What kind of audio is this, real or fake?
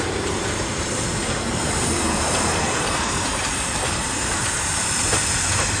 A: fake